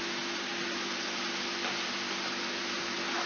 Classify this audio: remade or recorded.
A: recorded